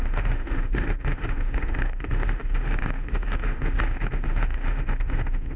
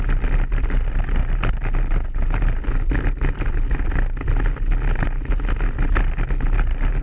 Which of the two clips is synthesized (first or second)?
first